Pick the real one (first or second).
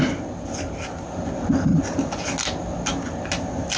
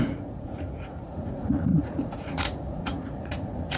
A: first